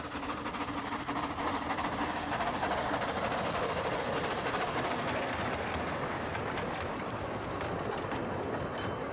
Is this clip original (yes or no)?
yes